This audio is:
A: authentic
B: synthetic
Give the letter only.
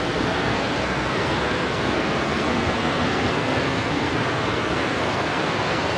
B